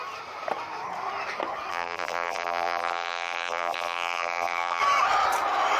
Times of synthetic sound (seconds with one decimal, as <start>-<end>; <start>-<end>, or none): 1.7-4.8